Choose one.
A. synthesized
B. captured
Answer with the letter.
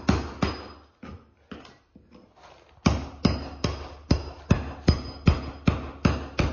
B